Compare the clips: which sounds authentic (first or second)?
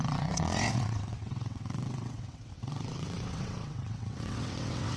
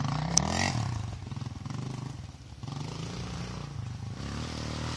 second